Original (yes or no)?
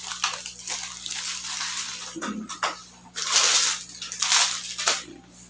yes